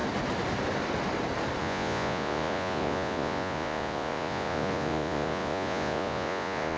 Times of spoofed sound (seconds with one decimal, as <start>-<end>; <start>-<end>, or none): 1.6-6.8